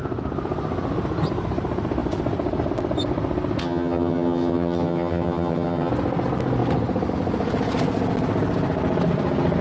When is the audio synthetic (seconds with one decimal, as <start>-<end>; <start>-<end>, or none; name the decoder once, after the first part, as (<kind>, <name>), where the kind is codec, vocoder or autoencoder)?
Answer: 3.6-5.9 (vocoder, HiFi-GAN)